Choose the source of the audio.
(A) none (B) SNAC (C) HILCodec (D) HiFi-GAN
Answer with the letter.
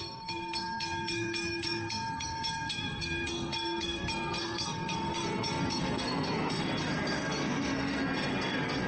B